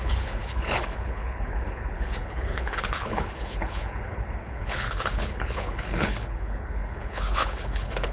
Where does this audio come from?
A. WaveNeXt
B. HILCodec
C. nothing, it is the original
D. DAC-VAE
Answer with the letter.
B